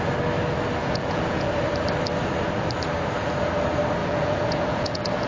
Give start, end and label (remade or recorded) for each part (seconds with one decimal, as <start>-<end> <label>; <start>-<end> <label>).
0.0-0.8 recorded; 0.8-1.5 remade; 1.5-4.0 recorded; 4.0-5.3 remade